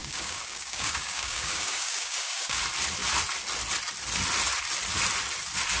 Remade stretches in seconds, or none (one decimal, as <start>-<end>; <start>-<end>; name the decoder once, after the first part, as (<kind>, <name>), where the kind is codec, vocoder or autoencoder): 0.0-2.6 (codec, DAC)